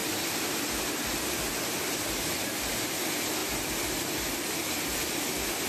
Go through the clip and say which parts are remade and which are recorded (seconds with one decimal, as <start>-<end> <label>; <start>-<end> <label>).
0.0-1.0 remade; 1.0-5.7 recorded